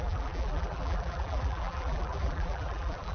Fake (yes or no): yes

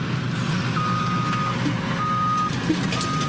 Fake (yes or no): no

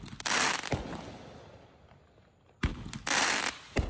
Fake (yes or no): no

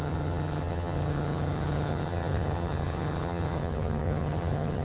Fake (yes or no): yes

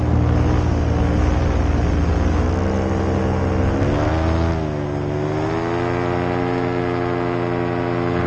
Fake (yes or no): no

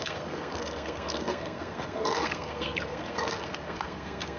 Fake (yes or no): yes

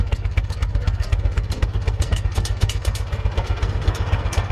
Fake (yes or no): yes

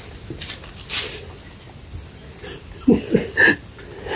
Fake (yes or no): no